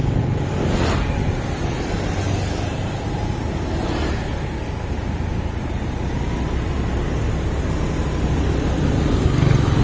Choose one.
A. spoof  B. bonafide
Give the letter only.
B